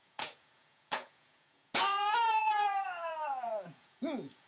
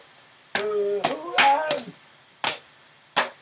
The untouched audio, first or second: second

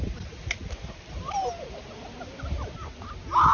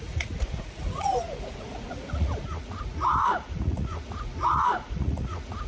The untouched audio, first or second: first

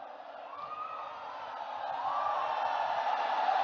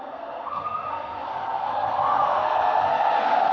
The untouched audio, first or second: first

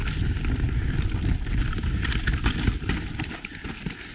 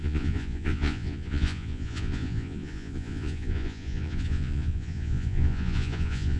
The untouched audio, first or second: first